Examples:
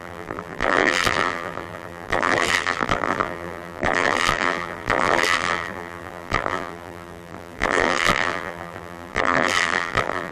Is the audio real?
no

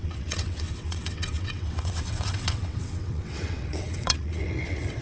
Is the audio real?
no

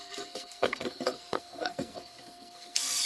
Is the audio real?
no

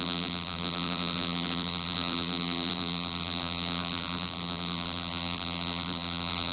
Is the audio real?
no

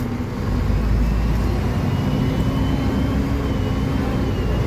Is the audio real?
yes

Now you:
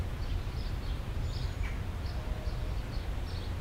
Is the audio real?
yes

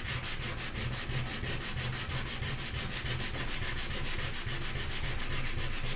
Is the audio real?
yes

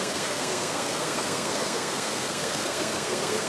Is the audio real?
no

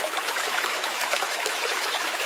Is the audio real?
no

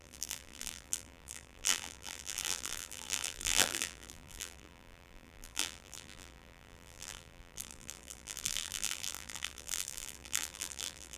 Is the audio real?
no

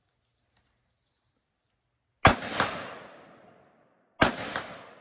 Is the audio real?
yes